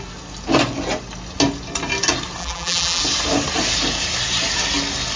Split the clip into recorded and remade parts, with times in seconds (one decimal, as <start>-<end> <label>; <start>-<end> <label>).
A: 0.0-2.4 recorded; 2.4-3.0 remade; 3.0-5.2 recorded